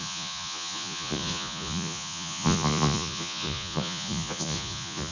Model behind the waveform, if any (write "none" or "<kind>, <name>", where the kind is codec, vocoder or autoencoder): vocoder, Vocos